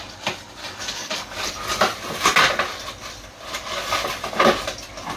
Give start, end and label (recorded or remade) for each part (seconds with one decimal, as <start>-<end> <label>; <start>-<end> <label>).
0.0-0.6 recorded; 0.6-1.5 remade; 1.5-5.2 recorded